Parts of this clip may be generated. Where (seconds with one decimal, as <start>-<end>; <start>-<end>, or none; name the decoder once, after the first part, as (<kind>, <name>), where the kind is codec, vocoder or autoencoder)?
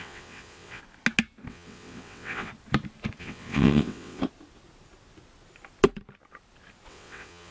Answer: 0.0-0.8 (vocoder, WaveNeXt); 1.5-2.5; 3.2-4.2; 6.9-7.5